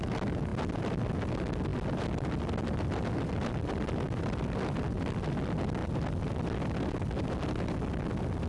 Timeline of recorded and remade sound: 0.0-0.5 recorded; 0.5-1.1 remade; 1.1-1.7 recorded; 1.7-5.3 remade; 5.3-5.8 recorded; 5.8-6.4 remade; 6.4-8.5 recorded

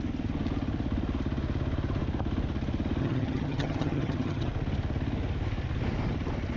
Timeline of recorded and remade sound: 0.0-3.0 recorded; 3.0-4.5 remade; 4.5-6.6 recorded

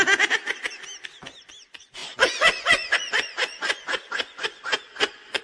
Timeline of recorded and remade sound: 0.0-2.0 recorded; 2.0-5.4 remade

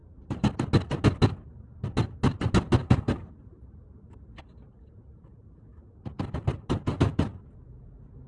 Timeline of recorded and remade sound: 0.0-0.5 remade; 0.5-2.8 recorded; 2.8-4.4 remade; 4.4-7.1 recorded; 7.1-7.9 remade; 7.9-8.3 recorded

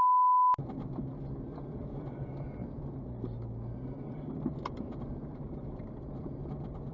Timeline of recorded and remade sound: 0.0-2.6 remade; 2.6-4.0 recorded; 4.0-6.9 remade